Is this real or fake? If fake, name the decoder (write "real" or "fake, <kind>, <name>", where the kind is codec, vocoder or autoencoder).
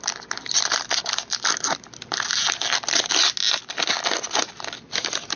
real